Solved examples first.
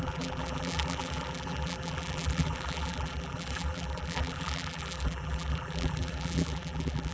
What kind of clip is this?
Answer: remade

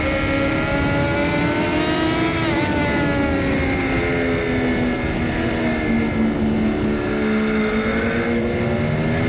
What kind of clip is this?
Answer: recorded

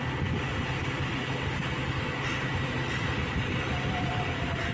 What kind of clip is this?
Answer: recorded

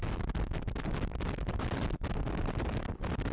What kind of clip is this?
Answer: recorded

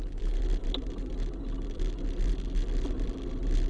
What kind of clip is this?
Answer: recorded